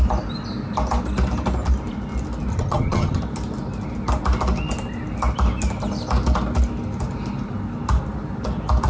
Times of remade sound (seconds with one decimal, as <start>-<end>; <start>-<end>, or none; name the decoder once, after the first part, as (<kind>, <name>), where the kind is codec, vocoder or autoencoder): 2.5-3.2 (vocoder, HiFi-GAN)